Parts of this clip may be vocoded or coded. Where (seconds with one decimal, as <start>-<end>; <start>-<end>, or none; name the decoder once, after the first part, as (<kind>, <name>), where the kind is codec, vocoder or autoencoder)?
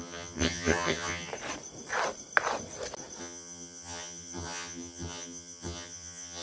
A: 0.0-1.3 (vocoder, HiFi-GAN); 3.2-6.4